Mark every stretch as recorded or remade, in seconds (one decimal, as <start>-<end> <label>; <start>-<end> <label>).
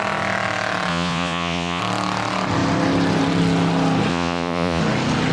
0.0-0.9 recorded; 0.9-1.8 remade; 1.8-4.1 recorded; 4.1-4.8 remade; 4.8-5.3 recorded